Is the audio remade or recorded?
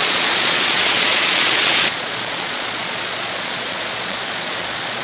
remade